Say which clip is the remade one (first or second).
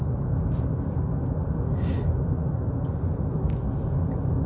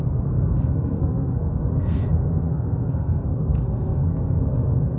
second